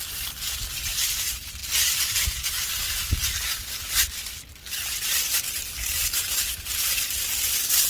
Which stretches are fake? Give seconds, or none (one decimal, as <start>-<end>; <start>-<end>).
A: 0.0-1.6; 2.5-7.9